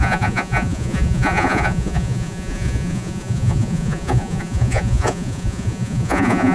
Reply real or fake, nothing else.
fake